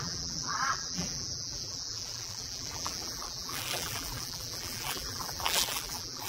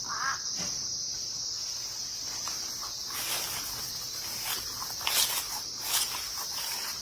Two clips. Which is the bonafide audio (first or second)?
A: second